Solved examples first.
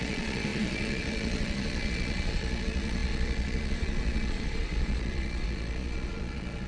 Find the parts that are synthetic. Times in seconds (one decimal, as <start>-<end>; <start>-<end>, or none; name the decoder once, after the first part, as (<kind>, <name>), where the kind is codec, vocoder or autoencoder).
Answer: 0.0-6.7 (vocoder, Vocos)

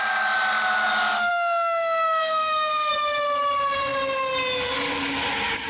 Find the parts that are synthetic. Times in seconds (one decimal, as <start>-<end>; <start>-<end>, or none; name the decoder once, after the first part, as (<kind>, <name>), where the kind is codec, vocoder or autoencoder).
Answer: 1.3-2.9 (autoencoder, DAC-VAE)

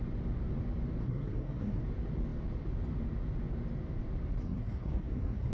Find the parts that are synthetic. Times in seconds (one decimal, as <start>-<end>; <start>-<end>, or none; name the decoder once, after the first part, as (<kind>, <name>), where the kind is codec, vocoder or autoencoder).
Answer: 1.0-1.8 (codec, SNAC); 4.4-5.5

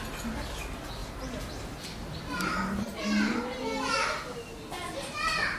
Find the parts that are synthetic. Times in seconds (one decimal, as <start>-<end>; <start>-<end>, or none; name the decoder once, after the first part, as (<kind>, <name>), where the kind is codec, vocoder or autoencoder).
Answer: none

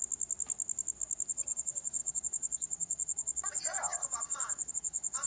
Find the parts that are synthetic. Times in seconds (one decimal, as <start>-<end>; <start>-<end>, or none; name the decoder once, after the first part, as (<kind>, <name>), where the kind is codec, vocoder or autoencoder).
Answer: 1.3-5.3 (vocoder, Vocos)

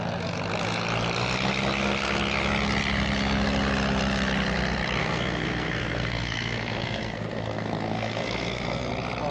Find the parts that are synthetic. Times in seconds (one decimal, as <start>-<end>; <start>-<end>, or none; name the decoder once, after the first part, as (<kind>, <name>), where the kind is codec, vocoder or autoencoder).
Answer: 5.0-8.9 (codec, SNAC)

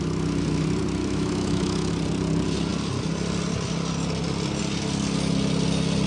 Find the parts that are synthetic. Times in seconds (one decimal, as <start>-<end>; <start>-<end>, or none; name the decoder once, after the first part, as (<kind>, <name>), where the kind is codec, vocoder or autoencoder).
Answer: 1.0-1.9 (autoencoder, DAC-VAE)